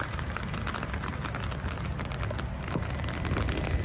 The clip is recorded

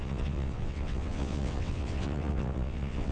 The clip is remade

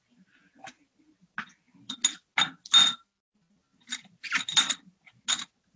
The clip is recorded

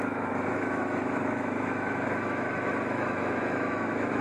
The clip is remade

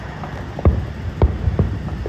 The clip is recorded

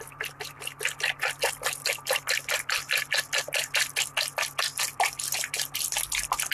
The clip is recorded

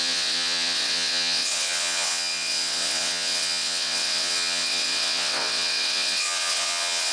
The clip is remade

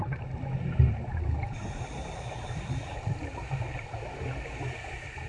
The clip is recorded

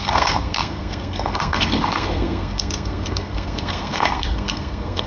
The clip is remade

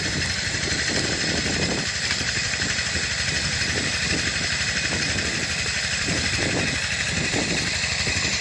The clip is remade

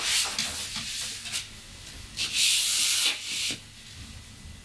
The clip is recorded